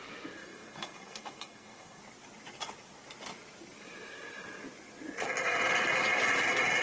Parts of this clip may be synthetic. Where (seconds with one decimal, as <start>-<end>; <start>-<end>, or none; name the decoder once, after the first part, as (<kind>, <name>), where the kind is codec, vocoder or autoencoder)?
0.4-2.0 (codec, SNAC)